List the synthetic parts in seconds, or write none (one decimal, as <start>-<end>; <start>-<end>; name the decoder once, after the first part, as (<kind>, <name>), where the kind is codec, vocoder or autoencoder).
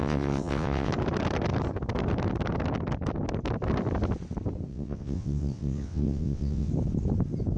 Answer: 0.0-0.9 (vocoder, WaveNeXt); 4.7-6.7